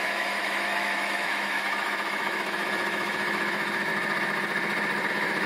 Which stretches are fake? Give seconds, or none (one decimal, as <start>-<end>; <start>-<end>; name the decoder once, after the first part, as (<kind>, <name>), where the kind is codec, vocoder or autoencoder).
0.0-3.9 (autoencoder, DAC-VAE); 5.1-5.5